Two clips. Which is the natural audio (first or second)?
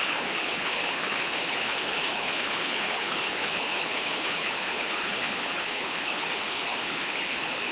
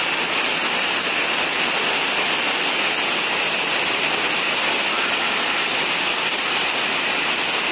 second